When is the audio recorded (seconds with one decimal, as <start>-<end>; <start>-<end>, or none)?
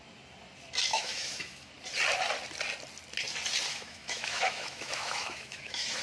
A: 0.0-0.9; 1.7-3.7